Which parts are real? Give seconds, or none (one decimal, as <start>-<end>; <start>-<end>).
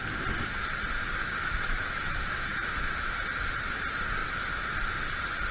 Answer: 0.0-1.2; 3.2-4.2; 4.7-5.5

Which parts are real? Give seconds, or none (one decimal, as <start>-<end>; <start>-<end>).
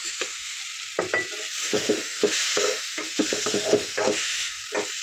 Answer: 0.6-1.6; 4.6-5.0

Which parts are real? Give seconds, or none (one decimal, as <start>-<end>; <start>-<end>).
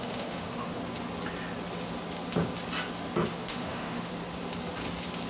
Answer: 0.8-3.3; 4.1-5.3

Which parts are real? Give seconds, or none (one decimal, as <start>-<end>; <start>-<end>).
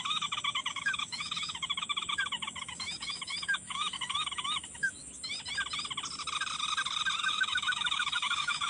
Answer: 5.0-7.2